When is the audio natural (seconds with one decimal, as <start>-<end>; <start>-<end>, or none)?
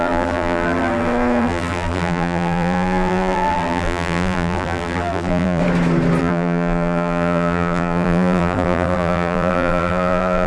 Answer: 5.6-6.2